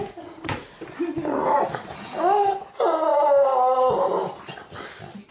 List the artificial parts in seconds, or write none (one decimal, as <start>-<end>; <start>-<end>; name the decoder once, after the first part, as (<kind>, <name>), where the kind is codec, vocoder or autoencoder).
0.0-0.6 (vocoder, Vocos)